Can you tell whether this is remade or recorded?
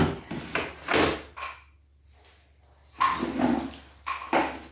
recorded